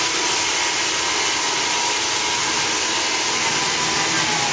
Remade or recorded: recorded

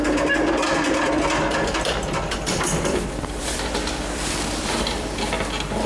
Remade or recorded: remade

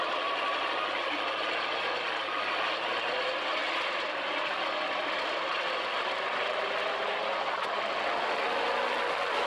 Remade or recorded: recorded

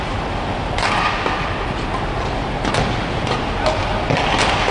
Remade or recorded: recorded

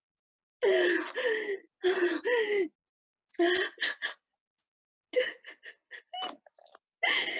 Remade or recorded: recorded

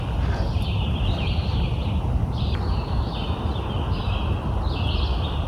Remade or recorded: recorded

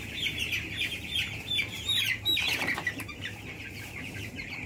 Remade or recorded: remade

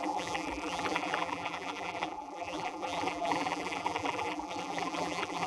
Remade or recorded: remade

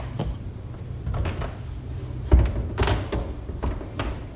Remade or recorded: recorded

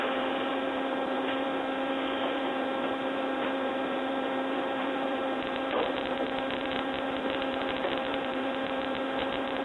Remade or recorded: remade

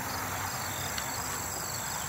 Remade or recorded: recorded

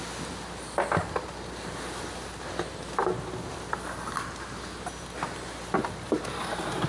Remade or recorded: recorded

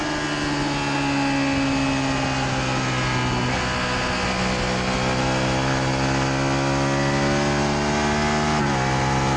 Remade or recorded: recorded